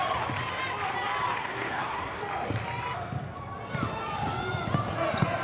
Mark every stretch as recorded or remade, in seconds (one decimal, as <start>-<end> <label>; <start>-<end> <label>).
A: 0.0-1.4 recorded; 1.4-2.2 remade; 2.2-5.4 recorded